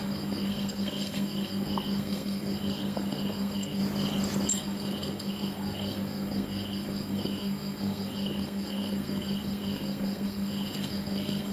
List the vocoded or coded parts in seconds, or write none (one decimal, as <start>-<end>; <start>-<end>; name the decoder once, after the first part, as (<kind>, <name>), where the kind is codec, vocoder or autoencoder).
0.0-3.8 (codec, SNAC); 4.5-11.5